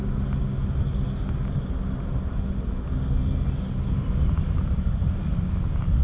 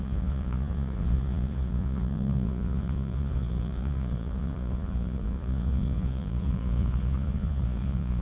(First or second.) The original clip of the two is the first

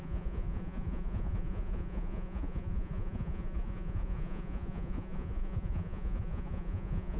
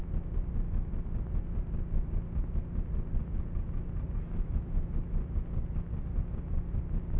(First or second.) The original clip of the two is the second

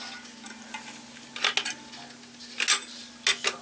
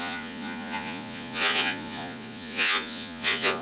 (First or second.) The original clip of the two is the first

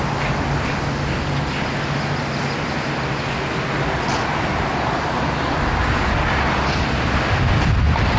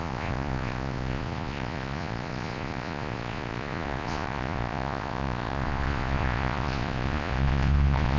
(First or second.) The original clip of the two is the first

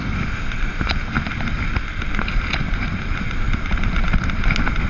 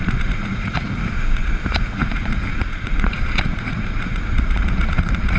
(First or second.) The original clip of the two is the first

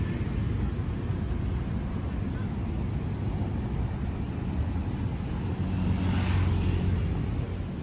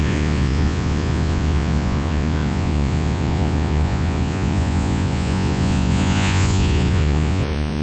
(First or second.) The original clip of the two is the first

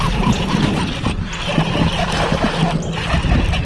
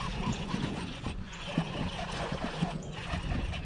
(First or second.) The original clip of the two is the first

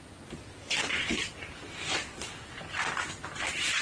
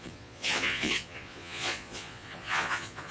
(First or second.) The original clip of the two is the first